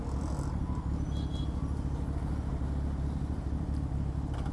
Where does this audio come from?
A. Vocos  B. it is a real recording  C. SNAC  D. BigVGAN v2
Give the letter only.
B